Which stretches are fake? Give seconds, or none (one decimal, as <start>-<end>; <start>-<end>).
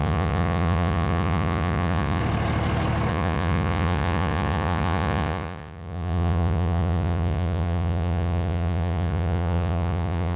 0.0-2.2; 3.1-10.4